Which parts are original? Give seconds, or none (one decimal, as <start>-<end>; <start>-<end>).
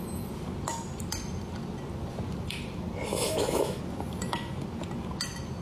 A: 0.0-3.1; 3.8-5.6